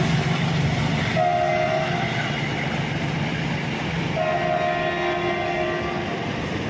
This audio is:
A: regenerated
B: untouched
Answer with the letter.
B